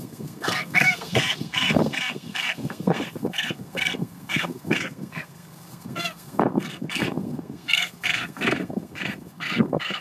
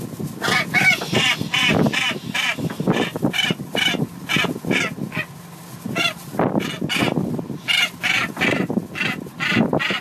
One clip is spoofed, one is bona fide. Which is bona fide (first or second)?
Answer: second